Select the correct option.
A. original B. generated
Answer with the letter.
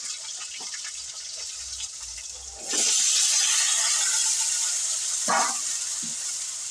A